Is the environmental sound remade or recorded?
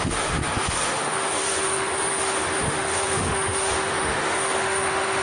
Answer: remade